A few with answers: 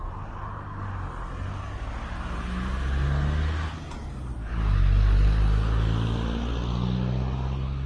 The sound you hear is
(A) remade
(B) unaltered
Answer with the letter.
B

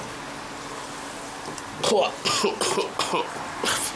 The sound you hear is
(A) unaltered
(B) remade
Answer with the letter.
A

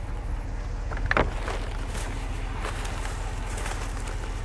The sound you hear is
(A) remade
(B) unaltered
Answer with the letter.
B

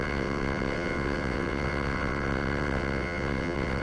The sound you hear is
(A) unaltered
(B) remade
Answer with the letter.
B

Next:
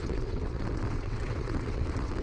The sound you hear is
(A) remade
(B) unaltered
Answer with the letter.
A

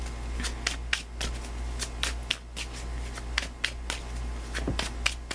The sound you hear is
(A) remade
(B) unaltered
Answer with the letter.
B